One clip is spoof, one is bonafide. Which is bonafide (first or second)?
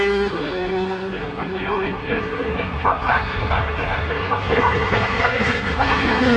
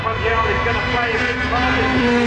second